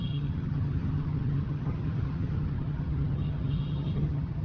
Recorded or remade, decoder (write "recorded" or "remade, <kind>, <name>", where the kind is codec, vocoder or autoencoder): remade, vocoder, HiFi-GAN